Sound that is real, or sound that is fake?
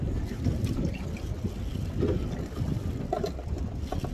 real